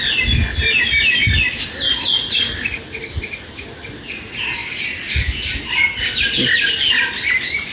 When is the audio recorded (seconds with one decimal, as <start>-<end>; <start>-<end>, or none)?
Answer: 0.0-7.7